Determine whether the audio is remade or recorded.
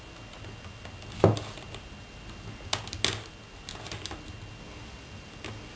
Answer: recorded